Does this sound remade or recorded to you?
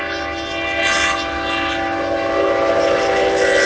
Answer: recorded